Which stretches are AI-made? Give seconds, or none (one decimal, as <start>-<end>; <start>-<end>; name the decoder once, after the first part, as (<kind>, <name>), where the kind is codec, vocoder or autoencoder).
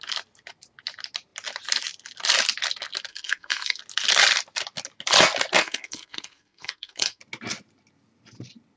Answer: 3.1-3.8 (codec, SNAC); 5.6-7.2